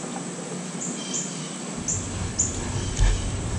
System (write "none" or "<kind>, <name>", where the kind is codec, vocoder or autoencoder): none